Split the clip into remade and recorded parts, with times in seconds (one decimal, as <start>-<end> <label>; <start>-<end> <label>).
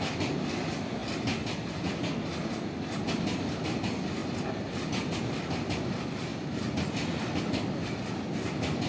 0.0-4.2 recorded; 4.2-5.8 remade; 5.8-8.9 recorded